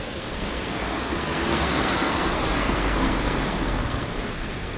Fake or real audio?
fake